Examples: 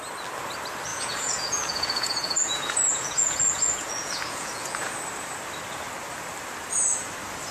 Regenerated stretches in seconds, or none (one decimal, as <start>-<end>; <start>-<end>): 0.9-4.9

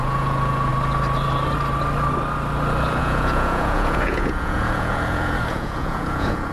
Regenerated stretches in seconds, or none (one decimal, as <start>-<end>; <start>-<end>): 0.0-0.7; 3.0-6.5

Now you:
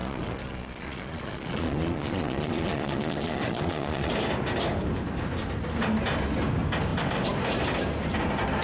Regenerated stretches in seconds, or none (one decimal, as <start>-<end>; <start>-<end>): 0.0-4.1

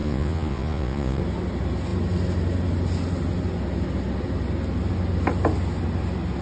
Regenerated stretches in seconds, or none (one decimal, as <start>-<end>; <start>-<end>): 0.0-1.2

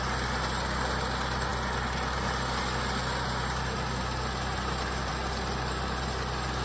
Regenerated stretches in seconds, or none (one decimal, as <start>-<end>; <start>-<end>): none